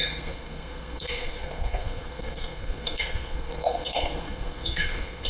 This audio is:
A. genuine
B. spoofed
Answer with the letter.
B